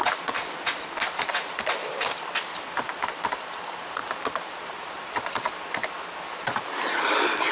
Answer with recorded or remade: recorded